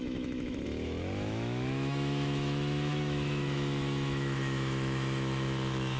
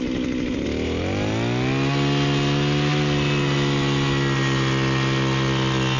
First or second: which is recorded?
second